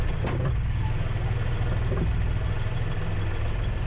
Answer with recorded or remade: recorded